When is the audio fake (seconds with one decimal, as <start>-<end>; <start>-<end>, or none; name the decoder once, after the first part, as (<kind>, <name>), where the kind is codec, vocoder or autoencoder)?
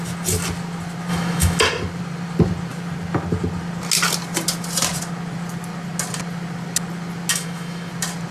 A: 1.1-1.6 (autoencoder, DAC-VAE); 7.3-7.9